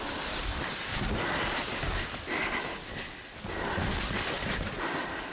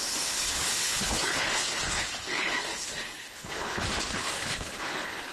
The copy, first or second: second